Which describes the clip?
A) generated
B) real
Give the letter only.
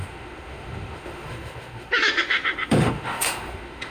A